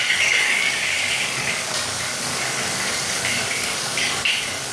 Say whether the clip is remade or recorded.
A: remade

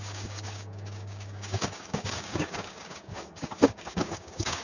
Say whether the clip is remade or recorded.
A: remade